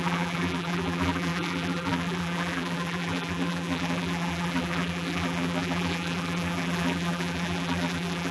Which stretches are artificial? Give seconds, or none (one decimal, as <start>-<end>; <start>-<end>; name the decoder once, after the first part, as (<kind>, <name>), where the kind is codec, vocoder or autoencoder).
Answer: 0.0-8.3 (vocoder, BigVGAN v2)